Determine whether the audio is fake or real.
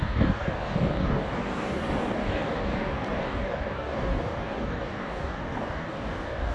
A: fake